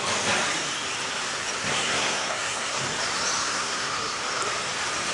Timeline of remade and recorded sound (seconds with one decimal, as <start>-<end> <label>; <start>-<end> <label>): 0.0-1.6 recorded; 1.6-2.8 remade; 2.8-3.4 recorded; 3.4-3.9 remade; 3.9-5.1 recorded